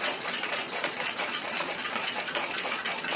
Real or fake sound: fake